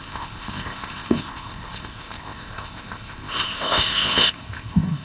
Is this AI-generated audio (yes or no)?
yes